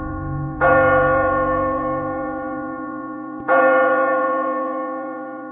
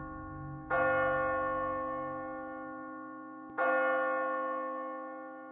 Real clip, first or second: second